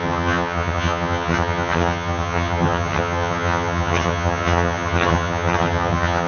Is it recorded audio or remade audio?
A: remade